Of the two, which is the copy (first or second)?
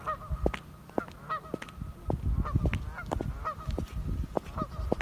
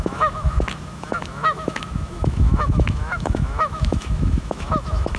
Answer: second